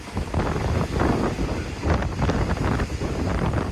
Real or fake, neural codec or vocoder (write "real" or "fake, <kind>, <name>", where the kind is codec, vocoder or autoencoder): real